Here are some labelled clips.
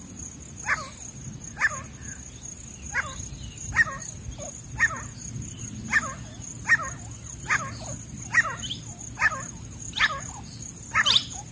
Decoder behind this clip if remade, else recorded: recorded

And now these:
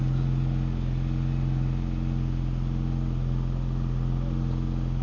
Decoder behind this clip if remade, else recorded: recorded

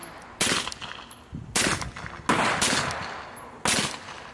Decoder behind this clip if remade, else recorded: recorded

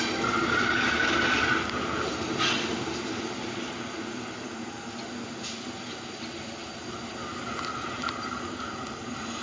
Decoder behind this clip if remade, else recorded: recorded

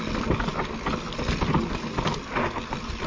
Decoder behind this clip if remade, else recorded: recorded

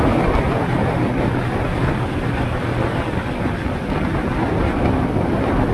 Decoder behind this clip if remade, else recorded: recorded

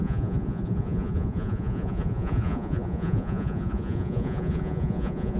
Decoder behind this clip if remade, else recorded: remade, vocoder, Vocos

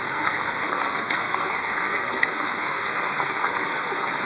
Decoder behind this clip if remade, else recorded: remade, codec, SNAC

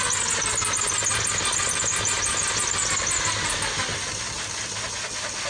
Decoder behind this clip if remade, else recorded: recorded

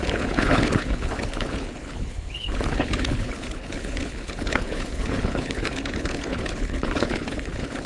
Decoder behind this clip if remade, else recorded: remade, codec, HILCodec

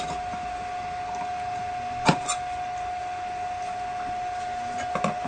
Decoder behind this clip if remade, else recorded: recorded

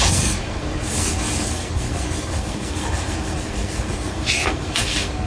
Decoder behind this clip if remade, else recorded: remade, codec, SNAC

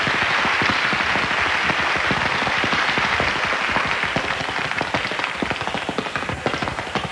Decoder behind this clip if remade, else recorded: recorded